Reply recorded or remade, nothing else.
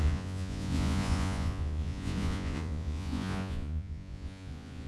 remade